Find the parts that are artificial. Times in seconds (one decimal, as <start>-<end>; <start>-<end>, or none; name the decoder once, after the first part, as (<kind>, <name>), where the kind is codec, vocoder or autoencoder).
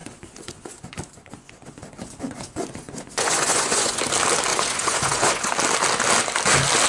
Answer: 0.0-4.0 (vocoder, Vocos); 4.5-5.5